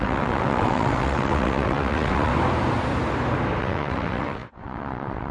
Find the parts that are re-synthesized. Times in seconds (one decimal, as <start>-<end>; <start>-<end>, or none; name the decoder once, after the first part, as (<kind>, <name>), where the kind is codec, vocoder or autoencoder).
0.0-2.3 (vocoder, WaveNeXt); 3.6-5.3